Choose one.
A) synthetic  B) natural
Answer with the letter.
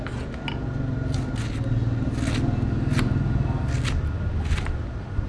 B